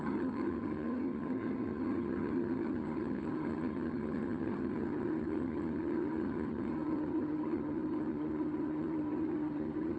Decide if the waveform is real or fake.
fake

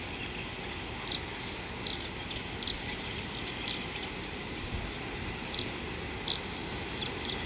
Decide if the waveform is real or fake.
real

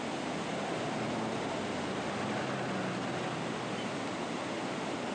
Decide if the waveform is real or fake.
real